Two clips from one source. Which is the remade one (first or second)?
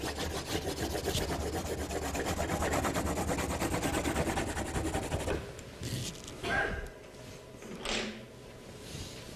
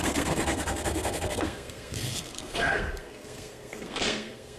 second